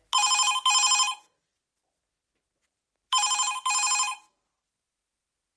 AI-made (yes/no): no